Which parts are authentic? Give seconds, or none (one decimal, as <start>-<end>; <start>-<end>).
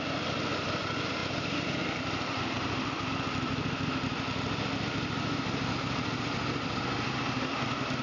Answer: 4.1-6.0